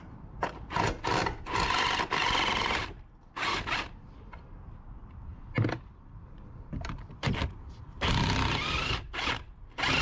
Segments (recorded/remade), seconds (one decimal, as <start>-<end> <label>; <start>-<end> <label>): 0.0-5.3 recorded; 5.3-7.7 remade; 7.7-10.0 recorded